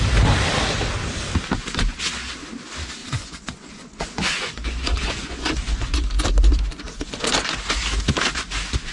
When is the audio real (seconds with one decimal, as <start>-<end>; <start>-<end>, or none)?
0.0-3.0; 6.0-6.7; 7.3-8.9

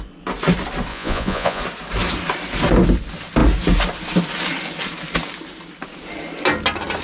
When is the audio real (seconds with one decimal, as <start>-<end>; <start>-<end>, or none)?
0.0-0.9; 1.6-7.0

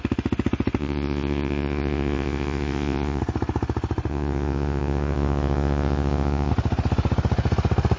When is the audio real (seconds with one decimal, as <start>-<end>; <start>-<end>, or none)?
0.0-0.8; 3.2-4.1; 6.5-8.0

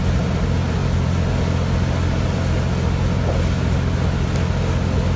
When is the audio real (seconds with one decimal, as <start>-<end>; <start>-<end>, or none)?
0.0-5.2

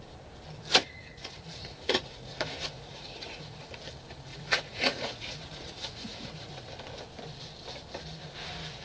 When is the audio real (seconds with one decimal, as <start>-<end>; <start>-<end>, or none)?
0.0-1.1; 3.7-4.3; 6.6-8.8

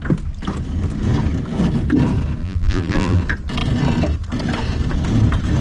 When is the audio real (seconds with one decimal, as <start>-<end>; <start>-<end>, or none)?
0.0-2.4; 3.2-5.6

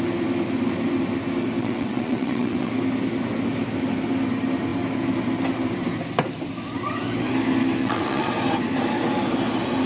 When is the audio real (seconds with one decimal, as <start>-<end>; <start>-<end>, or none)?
0.0-1.6; 2.7-7.8; 8.3-9.9

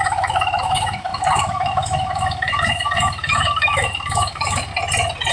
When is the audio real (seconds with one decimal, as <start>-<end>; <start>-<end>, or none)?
4.7-5.3